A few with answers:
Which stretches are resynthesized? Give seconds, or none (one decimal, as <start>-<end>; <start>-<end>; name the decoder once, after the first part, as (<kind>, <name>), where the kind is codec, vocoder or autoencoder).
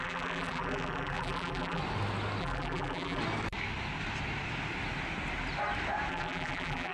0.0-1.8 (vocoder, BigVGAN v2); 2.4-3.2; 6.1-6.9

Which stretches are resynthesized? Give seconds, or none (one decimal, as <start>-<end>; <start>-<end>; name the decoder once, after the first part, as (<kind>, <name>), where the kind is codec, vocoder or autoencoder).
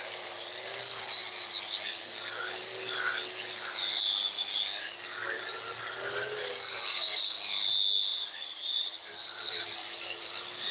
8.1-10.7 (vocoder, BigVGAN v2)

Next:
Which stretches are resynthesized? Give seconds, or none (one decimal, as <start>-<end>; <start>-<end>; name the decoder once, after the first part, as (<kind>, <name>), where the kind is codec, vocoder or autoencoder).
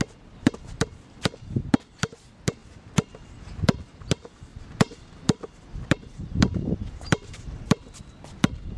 4.5-7.5 (vocoder, BigVGAN v2)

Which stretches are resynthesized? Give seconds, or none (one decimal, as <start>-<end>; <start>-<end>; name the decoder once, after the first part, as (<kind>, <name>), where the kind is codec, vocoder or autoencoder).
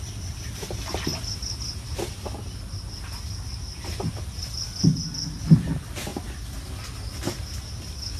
none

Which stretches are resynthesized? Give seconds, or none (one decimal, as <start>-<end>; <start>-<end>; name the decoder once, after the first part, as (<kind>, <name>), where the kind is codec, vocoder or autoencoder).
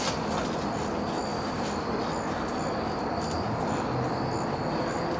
none